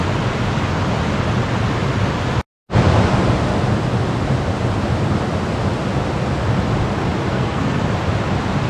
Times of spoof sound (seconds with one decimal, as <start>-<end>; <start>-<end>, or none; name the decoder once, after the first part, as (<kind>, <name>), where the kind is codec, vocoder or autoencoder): 7.3-7.8 (codec, SNAC)